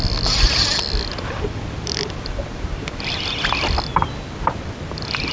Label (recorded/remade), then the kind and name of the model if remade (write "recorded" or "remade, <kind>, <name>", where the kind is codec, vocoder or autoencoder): recorded